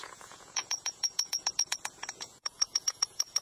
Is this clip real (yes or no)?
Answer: no